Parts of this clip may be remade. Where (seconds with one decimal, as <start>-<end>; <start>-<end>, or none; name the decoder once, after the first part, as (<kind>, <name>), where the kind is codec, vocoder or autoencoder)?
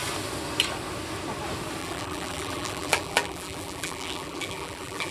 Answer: 1.8-5.1 (vocoder, BigVGAN v2)